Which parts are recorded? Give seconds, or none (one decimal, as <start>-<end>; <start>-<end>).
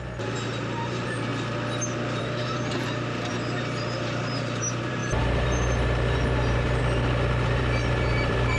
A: 1.3-2.2